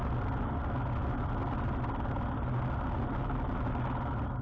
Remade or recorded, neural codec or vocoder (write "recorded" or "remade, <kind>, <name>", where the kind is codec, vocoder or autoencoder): recorded